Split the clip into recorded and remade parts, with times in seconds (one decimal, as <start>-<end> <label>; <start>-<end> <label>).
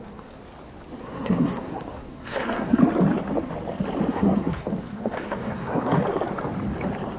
0.0-0.4 remade; 0.4-1.0 recorded; 1.0-2.8 remade; 2.8-4.1 recorded; 4.1-6.0 remade; 6.0-7.2 recorded